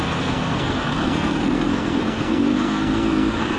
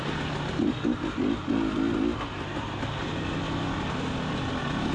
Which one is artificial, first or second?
first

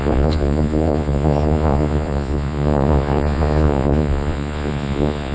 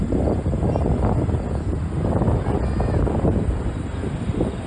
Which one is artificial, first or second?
first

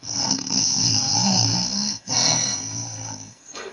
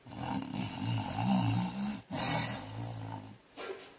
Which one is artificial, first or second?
first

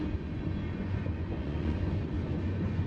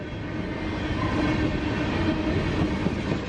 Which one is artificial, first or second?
first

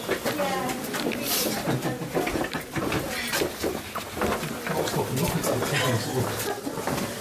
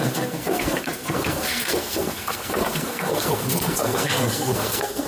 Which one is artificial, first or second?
second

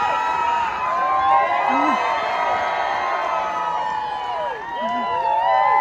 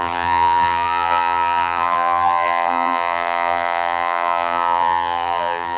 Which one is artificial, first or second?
second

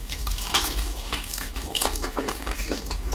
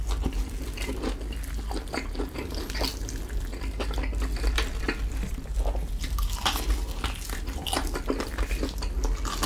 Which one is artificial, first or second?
first